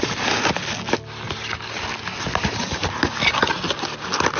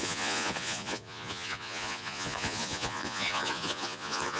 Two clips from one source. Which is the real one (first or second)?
first